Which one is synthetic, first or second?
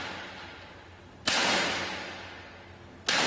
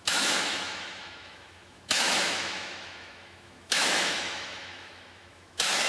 second